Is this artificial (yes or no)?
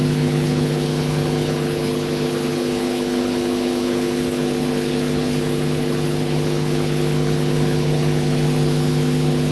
yes